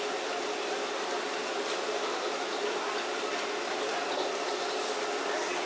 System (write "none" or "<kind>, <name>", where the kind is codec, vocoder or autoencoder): none